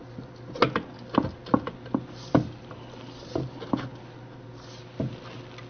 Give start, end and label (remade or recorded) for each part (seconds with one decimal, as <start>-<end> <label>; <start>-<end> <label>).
0.0-5.7 recorded